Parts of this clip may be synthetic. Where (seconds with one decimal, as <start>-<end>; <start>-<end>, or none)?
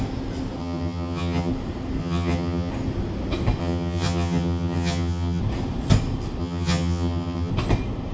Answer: 0.6-1.5; 2.0-2.7; 3.6-5.4; 6.4-7.5